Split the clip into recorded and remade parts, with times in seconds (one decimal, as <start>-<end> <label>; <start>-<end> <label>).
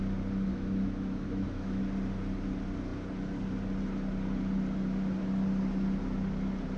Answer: 0.0-0.5 recorded; 0.5-1.8 remade; 1.8-6.8 recorded